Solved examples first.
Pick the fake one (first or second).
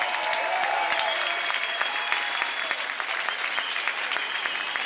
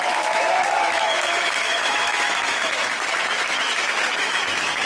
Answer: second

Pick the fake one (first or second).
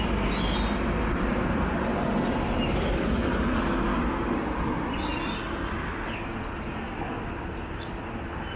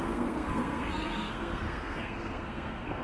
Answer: second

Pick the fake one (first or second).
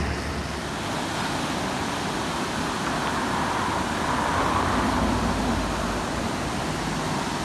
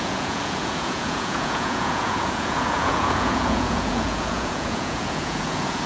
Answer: second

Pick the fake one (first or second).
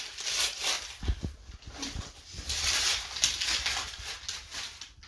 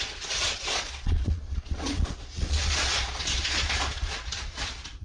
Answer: second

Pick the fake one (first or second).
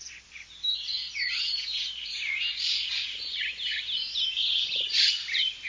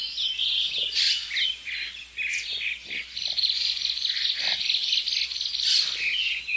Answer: first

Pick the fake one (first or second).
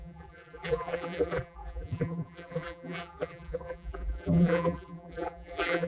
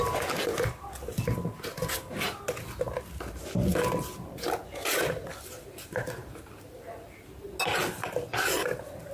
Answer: first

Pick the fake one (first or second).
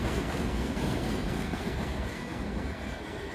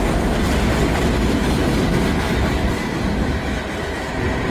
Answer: first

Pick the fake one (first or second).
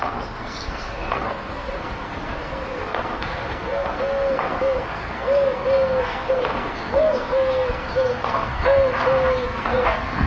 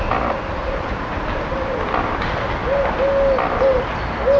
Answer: first